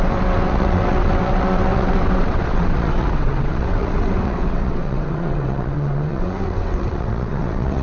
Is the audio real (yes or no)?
no